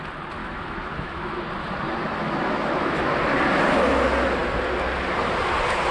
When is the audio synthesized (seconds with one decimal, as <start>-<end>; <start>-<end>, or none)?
0.4-1.3; 2.1-3.0